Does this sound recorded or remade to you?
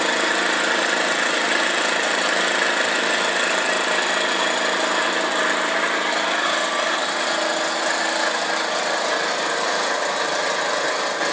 recorded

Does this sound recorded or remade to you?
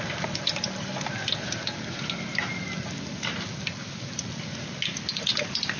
recorded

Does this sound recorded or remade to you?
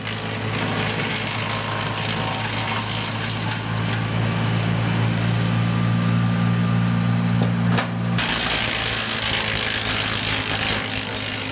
recorded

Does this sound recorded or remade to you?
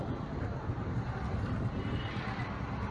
recorded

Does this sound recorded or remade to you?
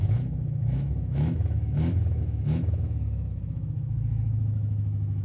remade